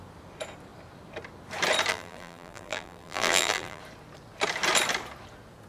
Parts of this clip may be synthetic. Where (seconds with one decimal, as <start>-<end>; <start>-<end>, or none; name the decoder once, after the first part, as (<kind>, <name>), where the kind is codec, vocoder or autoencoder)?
1.9-3.8 (vocoder, BigVGAN v2)